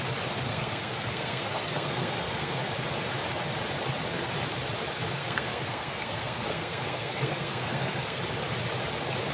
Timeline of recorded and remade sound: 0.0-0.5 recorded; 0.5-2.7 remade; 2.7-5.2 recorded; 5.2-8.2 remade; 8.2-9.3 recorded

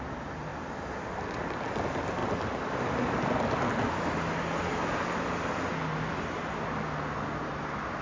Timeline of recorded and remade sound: 0.0-8.0 recorded

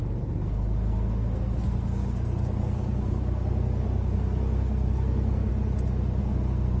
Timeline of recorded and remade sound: 0.0-5.5 remade; 5.5-6.2 recorded; 6.2-6.8 remade

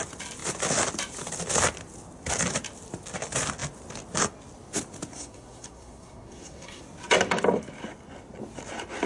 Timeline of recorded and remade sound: 0.0-5.1 recorded; 5.1-6.8 remade; 6.8-9.1 recorded

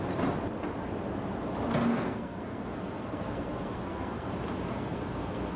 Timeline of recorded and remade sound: 0.0-1.9 recorded; 1.9-4.3 remade; 4.3-4.7 recorded; 4.7-5.6 remade